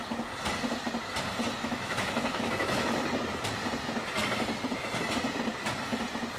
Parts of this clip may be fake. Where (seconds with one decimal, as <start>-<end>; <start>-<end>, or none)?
1.6-2.9